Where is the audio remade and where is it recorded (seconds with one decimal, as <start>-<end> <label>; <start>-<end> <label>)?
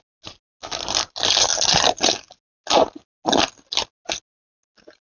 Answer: 0.0-5.1 recorded